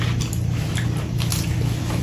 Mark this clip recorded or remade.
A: recorded